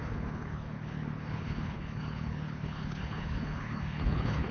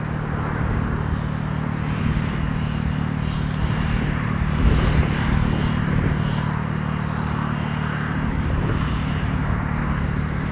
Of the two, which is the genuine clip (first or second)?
second